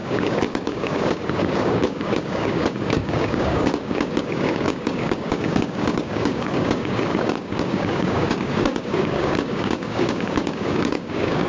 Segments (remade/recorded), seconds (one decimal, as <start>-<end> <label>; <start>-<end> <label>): 0.0-11.5 remade